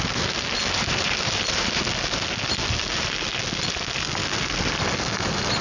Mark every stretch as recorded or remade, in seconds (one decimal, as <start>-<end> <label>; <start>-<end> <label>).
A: 0.0-0.6 recorded; 0.6-1.8 remade; 1.8-5.6 recorded